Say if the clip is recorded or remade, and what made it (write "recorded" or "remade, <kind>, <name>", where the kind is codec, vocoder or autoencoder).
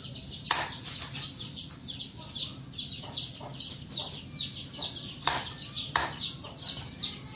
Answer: recorded